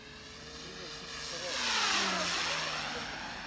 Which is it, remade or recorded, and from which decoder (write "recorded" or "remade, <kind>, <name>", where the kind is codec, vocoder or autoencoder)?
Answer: recorded